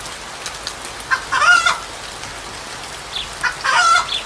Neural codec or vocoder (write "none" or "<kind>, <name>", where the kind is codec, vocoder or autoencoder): none